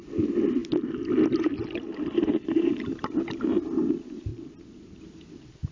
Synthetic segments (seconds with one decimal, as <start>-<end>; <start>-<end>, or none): none